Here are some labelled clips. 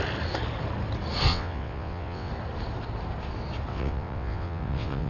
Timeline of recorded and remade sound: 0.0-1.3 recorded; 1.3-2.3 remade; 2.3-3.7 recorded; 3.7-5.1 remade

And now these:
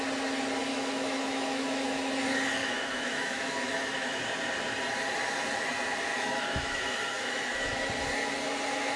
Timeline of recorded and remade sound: 0.0-0.7 recorded; 0.7-2.1 remade; 2.1-2.6 recorded; 2.6-4.2 remade; 4.2-6.1 recorded; 6.1-7.9 remade; 7.9-9.0 recorded

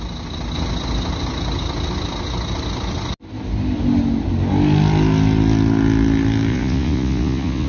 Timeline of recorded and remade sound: 0.0-6.5 recorded; 6.5-7.7 remade